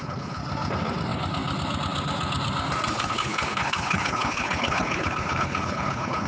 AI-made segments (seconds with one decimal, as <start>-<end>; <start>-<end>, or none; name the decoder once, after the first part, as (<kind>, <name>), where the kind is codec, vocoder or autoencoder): 0.0-0.4 (codec, HILCodec); 2.9-6.3